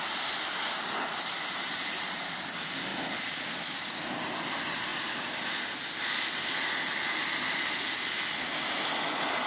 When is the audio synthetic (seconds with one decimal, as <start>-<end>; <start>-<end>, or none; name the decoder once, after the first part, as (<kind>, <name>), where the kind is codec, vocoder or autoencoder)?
none